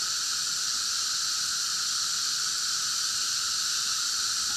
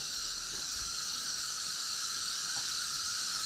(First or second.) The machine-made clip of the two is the second